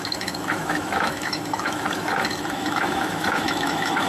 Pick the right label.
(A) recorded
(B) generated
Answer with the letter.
B